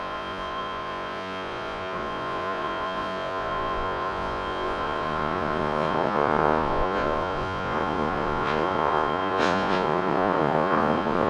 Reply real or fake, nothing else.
fake